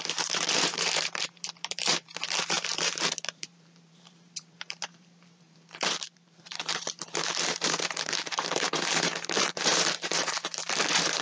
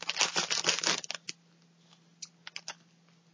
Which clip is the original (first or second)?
second